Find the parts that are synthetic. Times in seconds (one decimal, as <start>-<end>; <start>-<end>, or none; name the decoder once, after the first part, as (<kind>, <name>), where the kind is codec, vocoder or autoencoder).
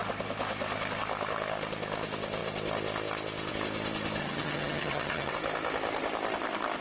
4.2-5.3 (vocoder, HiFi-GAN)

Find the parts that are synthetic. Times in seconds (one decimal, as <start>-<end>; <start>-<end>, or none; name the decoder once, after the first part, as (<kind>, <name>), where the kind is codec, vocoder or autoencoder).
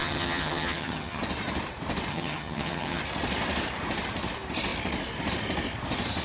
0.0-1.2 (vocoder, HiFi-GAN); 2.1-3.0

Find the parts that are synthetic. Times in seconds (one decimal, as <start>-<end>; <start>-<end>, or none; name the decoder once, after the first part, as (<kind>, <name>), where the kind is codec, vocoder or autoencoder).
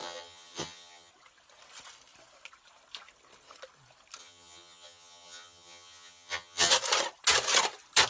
0.0-1.1 (vocoder, HiFi-GAN); 4.2-6.7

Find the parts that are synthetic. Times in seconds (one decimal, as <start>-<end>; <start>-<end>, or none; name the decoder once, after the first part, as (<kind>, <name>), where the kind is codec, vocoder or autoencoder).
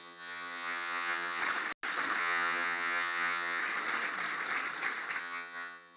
0.0-1.4 (vocoder, HiFi-GAN); 2.2-3.6; 5.2-6.0